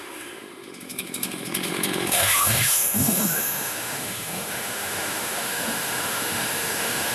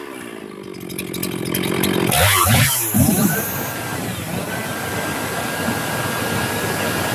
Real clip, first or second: second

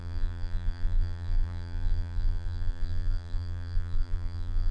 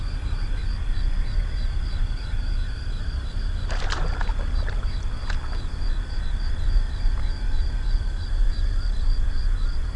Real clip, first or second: second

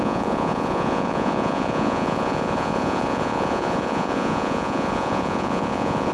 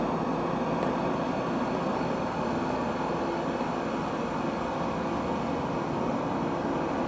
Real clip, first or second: second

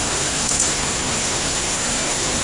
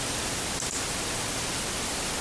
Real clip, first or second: second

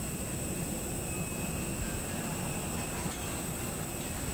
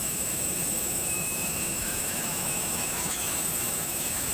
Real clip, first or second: first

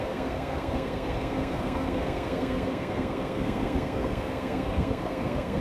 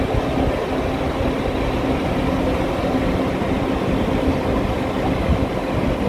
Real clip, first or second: second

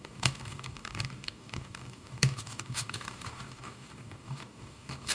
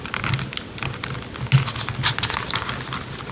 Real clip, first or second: second